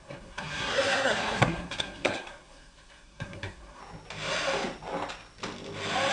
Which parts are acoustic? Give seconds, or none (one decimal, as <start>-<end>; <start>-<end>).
3.8-6.1